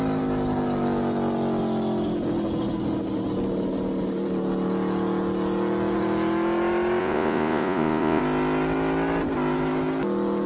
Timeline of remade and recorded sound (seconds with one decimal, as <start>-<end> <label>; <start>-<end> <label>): 0.0-7.0 recorded; 7.0-8.2 remade; 8.2-10.5 recorded